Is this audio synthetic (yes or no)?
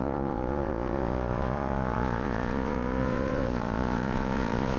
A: yes